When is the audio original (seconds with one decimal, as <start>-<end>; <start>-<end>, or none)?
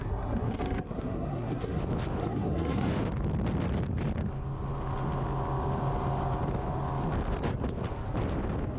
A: 1.8-2.2; 2.9-8.8